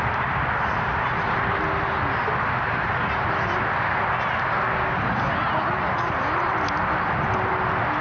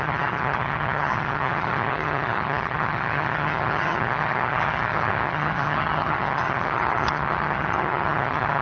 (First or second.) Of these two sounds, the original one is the first